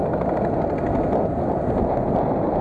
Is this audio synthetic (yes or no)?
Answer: no